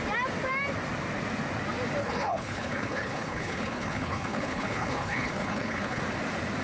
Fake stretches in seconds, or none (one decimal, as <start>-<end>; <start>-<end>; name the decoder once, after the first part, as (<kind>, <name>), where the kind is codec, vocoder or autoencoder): 2.0-6.0 (codec, HILCodec)